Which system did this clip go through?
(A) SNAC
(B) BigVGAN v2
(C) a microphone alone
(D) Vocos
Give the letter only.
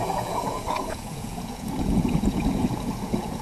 D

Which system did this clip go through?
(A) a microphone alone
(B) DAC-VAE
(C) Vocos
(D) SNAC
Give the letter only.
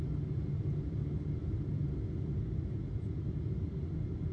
A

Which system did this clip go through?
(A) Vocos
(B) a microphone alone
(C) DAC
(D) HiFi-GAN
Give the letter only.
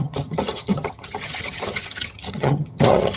D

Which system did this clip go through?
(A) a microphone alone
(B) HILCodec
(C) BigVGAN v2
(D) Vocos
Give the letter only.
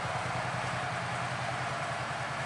C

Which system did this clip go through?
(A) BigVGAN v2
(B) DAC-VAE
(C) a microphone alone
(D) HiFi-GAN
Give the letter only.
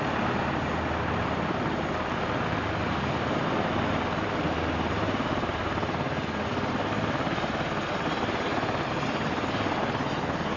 C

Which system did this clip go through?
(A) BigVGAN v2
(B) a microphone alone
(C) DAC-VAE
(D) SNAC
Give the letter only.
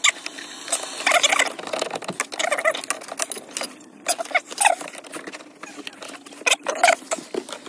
B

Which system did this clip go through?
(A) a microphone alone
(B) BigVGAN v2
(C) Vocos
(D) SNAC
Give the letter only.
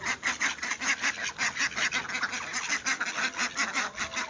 A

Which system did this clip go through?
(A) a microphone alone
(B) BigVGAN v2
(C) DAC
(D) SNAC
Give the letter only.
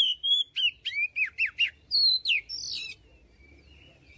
A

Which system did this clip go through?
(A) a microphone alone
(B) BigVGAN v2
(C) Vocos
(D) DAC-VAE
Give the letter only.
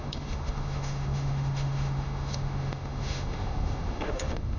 D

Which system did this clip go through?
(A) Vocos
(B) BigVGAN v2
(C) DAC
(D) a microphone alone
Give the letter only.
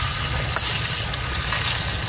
D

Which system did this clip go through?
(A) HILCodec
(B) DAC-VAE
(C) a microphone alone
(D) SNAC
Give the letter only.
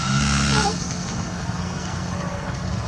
D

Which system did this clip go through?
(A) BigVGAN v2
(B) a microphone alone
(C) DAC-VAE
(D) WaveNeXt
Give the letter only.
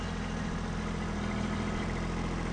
B